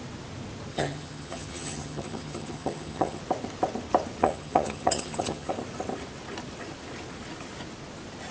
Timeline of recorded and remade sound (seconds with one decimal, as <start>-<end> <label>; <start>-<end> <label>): 0.0-0.7 recorded; 0.7-3.2 remade; 3.2-4.2 recorded; 4.2-5.5 remade; 5.5-8.3 recorded